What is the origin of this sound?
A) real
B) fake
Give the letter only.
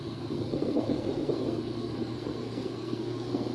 B